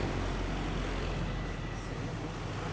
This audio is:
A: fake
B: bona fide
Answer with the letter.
B